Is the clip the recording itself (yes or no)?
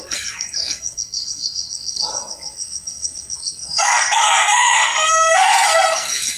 no